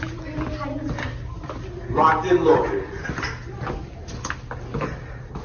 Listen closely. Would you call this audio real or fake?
real